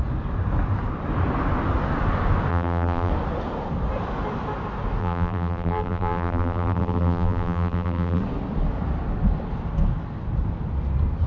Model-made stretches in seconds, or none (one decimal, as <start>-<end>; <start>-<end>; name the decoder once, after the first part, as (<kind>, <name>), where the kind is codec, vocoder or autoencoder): 2.5-3.1 (vocoder, BigVGAN v2); 5.0-8.2